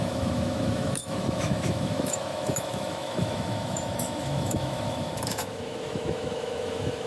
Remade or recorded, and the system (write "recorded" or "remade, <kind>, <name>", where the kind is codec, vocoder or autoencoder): remade, autoencoder, DAC-VAE